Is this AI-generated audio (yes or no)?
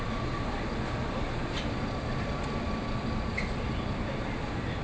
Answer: no